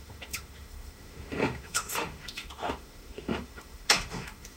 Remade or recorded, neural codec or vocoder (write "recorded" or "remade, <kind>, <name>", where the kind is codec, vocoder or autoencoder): remade, autoencoder, DAC-VAE